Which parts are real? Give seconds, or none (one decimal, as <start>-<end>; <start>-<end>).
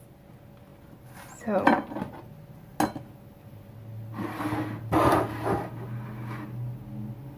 0.0-7.4